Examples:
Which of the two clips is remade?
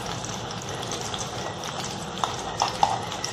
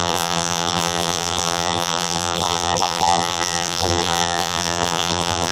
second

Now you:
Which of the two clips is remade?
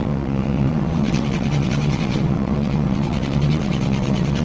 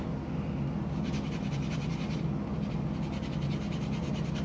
first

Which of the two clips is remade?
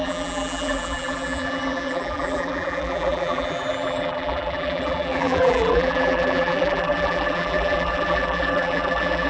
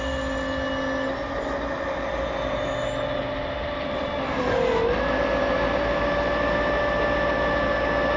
first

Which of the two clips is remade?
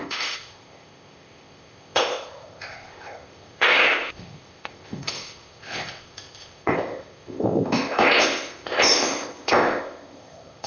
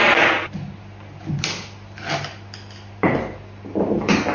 first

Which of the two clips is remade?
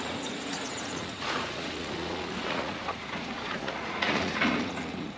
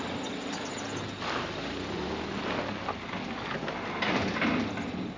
first